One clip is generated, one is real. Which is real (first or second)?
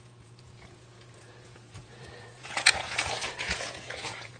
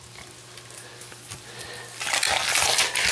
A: second